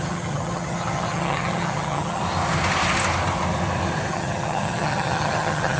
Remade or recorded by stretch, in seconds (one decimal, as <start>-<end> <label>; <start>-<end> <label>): 0.0-2.2 remade; 2.2-4.1 recorded; 4.1-5.8 remade